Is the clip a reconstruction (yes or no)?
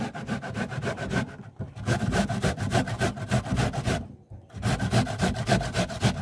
yes